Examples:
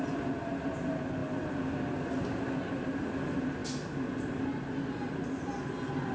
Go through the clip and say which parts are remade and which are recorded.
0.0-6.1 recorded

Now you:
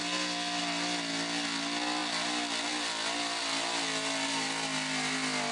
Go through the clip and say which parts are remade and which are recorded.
0.0-5.5 recorded

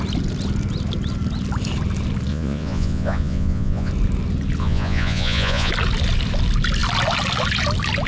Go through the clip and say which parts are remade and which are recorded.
0.0-2.3 recorded; 2.3-3.9 remade; 3.9-4.6 recorded; 4.6-5.7 remade; 5.7-8.1 recorded

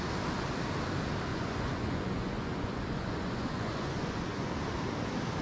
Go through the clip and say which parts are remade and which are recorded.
0.0-1.3 recorded; 1.3-4.5 remade; 4.5-5.4 recorded